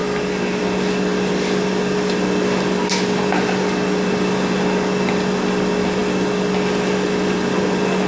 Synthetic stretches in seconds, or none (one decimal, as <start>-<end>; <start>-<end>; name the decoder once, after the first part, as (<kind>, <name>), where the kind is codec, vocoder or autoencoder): none